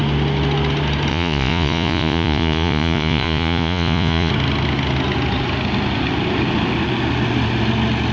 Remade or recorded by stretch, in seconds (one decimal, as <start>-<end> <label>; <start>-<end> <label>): 0.0-1.1 recorded; 1.1-4.3 remade; 4.3-8.1 recorded